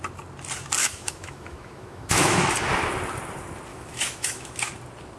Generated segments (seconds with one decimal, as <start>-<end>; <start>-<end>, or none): 0.8-2.5; 3.7-4.7